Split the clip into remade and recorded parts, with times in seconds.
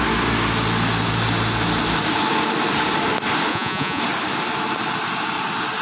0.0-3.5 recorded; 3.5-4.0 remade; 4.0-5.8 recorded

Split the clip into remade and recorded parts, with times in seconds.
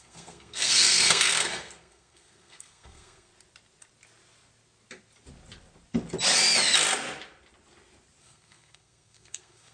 0.0-3.3 remade; 3.3-8.2 recorded; 8.2-9.7 remade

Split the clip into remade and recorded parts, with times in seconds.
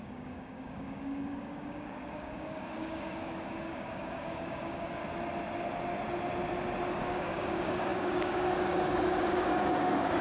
0.0-5.0 remade; 5.0-6.9 recorded; 6.9-10.2 remade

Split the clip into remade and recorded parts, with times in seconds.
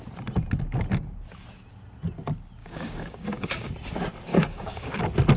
0.0-2.6 recorded; 2.6-3.7 remade; 3.7-4.3 recorded; 4.3-5.0 remade; 5.0-5.4 recorded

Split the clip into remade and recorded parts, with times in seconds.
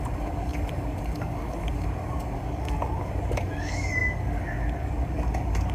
0.0-5.7 remade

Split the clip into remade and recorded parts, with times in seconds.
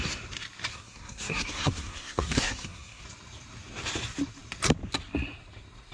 0.0-0.7 recorded; 0.7-3.0 remade; 3.0-5.9 recorded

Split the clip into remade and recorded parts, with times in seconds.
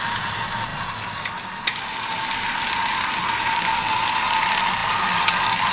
0.0-5.7 recorded